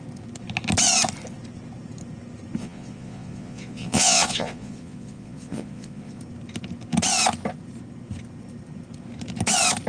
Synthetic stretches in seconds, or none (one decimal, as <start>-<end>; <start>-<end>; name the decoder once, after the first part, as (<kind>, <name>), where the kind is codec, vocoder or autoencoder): 2.6-6.2 (vocoder, Vocos)

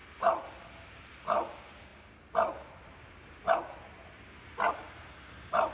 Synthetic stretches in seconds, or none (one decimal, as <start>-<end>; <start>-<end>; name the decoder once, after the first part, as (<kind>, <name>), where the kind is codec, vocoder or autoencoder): none

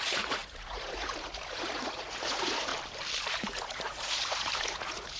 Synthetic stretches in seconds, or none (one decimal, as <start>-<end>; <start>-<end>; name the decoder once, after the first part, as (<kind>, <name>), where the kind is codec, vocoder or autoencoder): 0.0-2.7 (vocoder, Vocos); 3.3-5.2

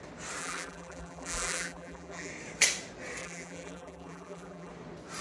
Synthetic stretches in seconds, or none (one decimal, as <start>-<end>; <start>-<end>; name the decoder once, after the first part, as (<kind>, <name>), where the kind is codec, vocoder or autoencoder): 0.4-2.3 (vocoder, BigVGAN v2); 3.2-4.7

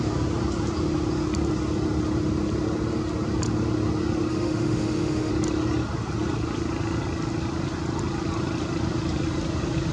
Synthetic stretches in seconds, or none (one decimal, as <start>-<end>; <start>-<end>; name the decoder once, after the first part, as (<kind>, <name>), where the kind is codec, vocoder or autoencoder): 4.3-5.3 (autoencoder, DAC-VAE)

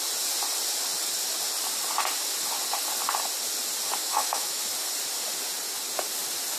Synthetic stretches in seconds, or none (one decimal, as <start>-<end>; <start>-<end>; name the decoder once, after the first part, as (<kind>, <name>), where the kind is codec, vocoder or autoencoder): 4.0-4.6 (autoencoder, DAC-VAE)